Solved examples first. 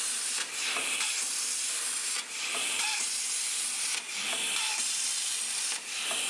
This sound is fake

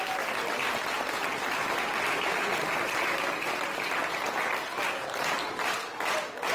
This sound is real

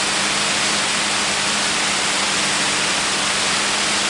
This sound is real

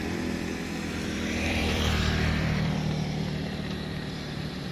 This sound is fake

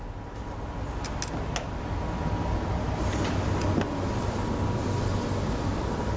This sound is real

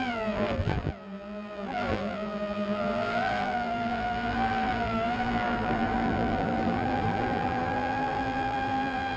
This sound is fake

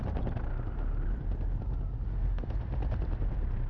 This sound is real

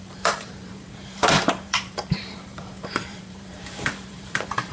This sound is fake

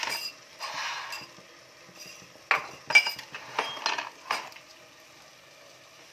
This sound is real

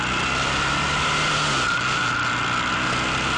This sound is real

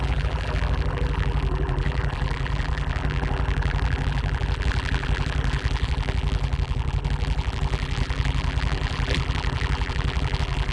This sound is fake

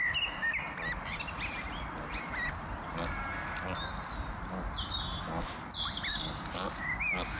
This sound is real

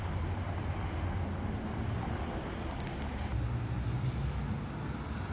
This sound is real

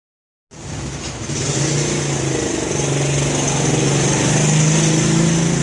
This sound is real